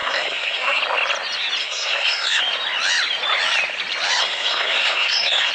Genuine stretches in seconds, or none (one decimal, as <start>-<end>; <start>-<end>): 0.8-1.6; 2.4-4.2